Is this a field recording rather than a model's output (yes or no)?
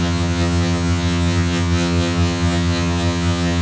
no